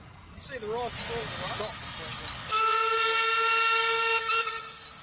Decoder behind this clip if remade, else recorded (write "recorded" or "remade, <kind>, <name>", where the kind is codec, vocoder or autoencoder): recorded